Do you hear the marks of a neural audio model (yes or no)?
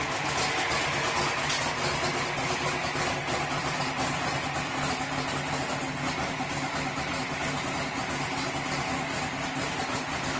no